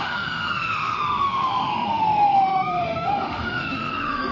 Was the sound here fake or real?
fake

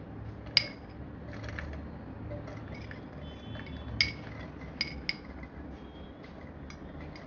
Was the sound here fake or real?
real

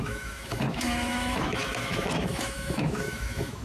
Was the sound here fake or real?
fake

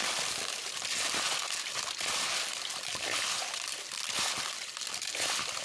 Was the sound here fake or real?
real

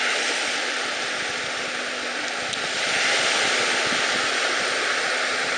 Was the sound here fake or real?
real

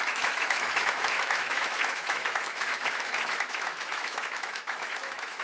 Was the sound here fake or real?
fake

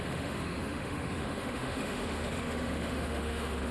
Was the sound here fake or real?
fake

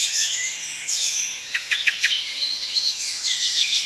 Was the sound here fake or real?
fake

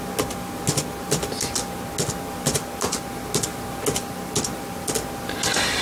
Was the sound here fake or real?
real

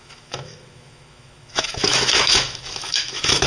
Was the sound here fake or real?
fake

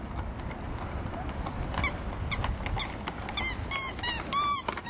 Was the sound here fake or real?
real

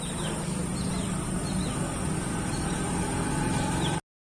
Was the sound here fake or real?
real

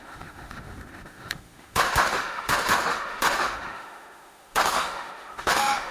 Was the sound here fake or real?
fake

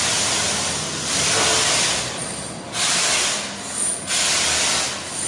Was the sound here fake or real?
real